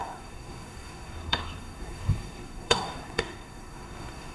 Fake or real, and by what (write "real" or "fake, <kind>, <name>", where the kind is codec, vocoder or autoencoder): fake, codec, SNAC